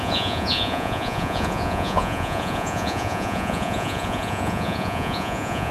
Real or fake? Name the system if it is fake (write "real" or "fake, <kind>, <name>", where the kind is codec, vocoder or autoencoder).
fake, vocoder, Vocos